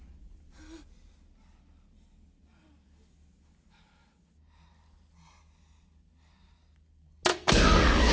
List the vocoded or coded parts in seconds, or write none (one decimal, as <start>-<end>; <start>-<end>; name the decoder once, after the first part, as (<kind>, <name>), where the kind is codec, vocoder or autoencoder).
7.3-8.1 (codec, SNAC)